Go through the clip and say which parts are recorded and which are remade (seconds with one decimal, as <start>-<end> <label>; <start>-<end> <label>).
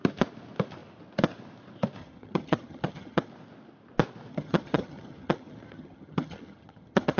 0.0-2.0 recorded; 2.0-3.3 remade; 3.3-4.3 recorded; 4.3-7.2 remade